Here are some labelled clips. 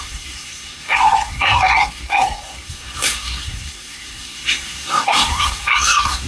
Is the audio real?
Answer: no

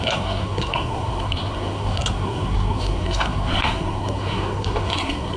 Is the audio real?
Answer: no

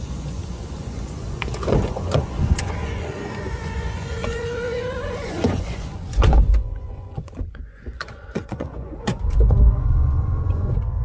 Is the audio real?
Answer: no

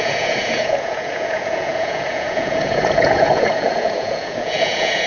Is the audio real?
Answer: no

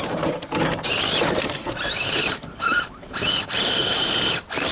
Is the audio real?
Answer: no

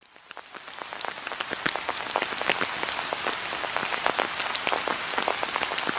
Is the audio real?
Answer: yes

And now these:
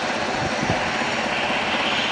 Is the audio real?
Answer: yes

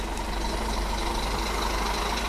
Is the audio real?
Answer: yes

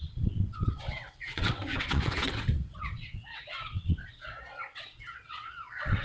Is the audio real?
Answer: no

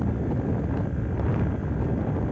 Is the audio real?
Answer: yes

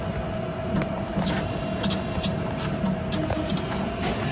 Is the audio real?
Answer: yes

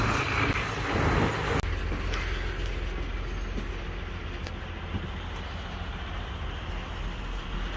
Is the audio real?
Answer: yes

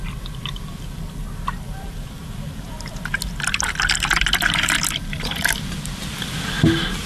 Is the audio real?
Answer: no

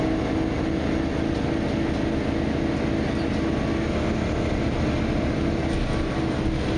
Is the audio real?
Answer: yes